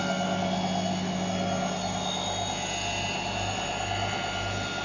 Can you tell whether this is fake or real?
real